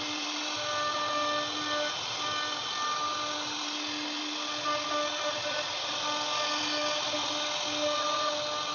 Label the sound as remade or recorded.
recorded